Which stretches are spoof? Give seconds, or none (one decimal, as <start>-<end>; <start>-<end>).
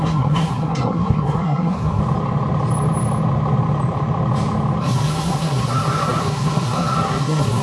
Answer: 0.0-2.0; 4.8-7.6